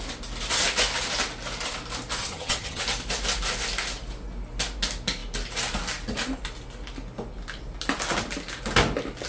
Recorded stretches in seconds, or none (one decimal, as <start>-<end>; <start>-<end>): 0.0-2.2; 2.8-9.3

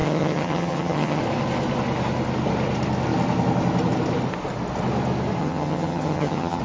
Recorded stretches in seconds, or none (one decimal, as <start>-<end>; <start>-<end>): 1.2-5.4

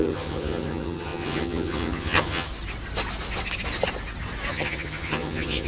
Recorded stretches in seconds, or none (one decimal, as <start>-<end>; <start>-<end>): 2.5-4.5

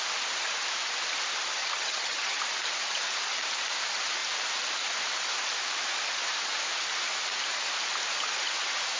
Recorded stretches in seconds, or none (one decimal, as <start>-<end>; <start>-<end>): 0.0-1.6; 2.4-9.0

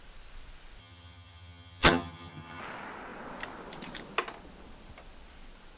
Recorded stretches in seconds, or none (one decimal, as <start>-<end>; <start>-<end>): 0.0-0.8; 2.6-5.8